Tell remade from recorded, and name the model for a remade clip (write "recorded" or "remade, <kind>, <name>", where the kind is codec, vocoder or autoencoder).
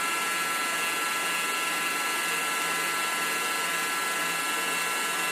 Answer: recorded